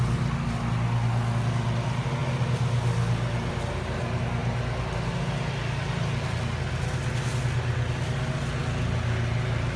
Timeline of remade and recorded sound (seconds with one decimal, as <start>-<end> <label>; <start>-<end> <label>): 0.0-9.8 recorded